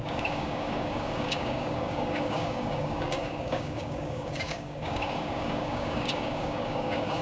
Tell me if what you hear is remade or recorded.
remade